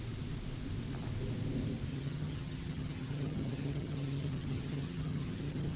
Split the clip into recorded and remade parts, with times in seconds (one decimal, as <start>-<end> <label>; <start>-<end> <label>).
0.0-1.9 recorded; 1.9-5.8 remade